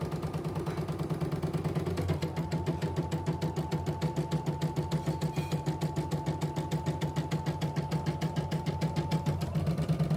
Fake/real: real